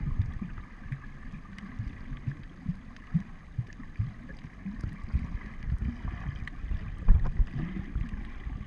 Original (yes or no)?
yes